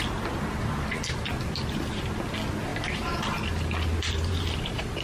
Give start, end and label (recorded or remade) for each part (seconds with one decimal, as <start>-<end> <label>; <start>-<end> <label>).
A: 0.0-2.7 recorded; 2.7-3.4 remade; 3.4-3.9 recorded; 3.9-5.0 remade